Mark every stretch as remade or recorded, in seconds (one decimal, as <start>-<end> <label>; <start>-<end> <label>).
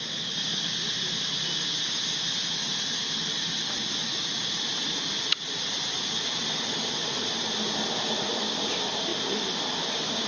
0.0-10.3 recorded